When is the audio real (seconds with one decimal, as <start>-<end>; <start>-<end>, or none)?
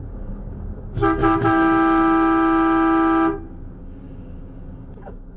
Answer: 1.2-3.8